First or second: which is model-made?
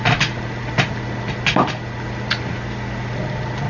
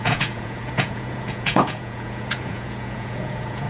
second